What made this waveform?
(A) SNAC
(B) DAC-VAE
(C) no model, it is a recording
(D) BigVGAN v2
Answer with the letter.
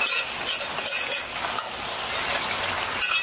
C